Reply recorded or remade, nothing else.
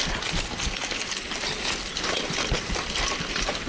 recorded